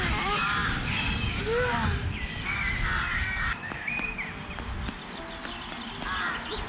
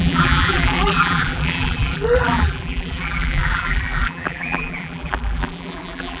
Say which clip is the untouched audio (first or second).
first